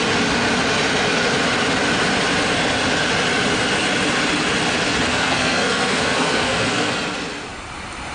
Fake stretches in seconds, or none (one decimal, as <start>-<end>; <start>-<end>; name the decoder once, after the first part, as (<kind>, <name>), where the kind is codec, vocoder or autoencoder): 5.1-6.9 (codec, SNAC)